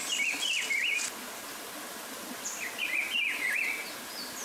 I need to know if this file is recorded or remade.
recorded